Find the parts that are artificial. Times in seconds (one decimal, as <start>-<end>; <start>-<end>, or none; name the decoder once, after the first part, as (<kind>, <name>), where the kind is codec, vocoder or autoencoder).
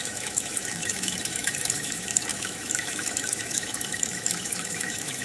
0.0-5.2 (autoencoder, DAC-VAE)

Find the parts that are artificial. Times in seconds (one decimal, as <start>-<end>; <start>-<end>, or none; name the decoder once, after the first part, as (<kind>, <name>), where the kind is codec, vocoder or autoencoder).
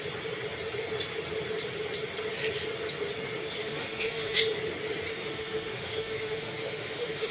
3.6-4.4 (autoencoder, DAC-VAE); 5.1-7.3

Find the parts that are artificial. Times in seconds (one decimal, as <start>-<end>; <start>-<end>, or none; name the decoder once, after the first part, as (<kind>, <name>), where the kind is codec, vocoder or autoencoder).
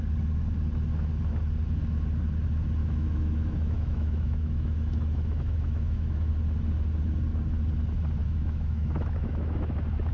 2.8-6.3 (autoencoder, DAC-VAE); 8.2-9.7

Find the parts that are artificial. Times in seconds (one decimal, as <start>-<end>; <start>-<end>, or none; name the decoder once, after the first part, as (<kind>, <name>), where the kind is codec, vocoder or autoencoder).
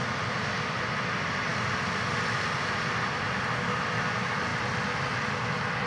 none